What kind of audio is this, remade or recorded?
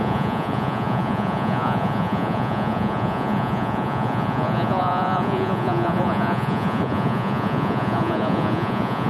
remade